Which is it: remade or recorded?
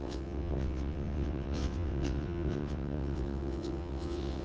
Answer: remade